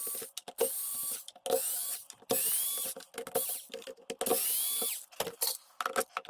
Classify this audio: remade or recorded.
recorded